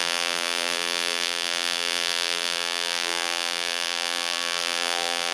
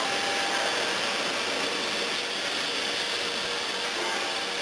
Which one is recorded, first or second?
second